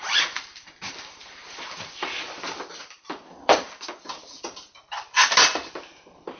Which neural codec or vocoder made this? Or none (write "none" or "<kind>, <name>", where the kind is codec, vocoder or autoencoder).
vocoder, BigVGAN v2